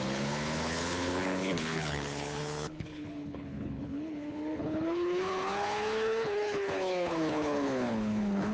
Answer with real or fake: fake